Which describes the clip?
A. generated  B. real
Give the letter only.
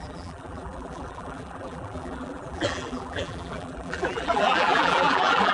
A